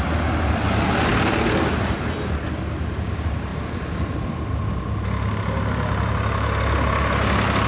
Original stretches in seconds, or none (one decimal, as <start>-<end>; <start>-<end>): 0.0-7.7